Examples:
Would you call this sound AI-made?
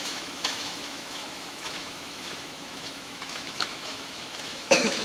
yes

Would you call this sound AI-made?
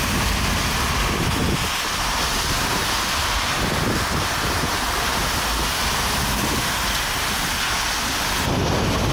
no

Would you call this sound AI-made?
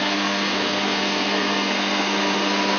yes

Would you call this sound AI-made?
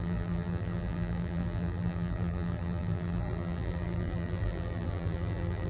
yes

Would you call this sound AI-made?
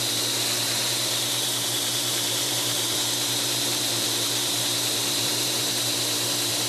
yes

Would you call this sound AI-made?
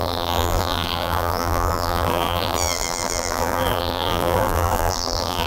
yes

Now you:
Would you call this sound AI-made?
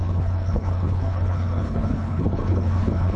yes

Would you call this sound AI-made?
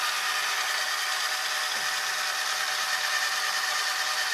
yes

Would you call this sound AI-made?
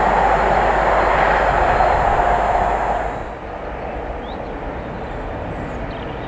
no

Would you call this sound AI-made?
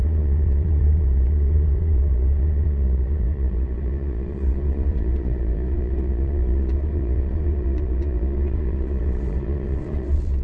yes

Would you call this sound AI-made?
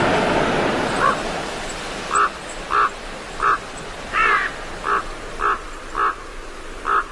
no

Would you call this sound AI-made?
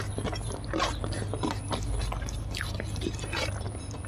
no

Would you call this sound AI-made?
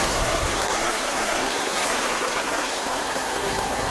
yes